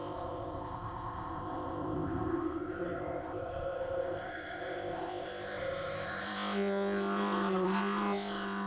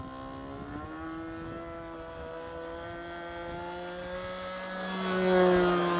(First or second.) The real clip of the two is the second